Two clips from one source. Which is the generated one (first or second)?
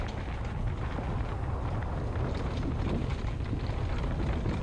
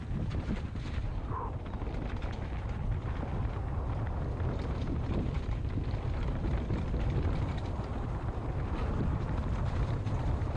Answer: second